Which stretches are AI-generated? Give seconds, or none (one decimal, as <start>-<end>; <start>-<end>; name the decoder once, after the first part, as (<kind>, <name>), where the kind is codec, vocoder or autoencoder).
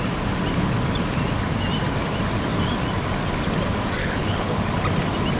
4.0-4.6 (codec, HILCodec)